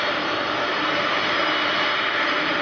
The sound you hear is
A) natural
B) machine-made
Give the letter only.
B